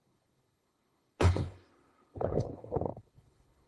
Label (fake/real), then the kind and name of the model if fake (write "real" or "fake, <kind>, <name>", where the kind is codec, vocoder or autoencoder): fake, codec, HILCodec